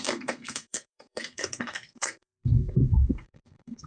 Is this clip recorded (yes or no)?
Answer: no